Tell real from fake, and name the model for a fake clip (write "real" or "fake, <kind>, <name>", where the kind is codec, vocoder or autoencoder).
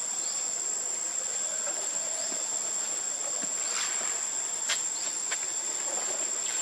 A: real